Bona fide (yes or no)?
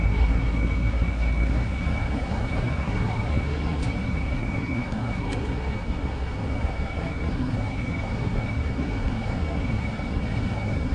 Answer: no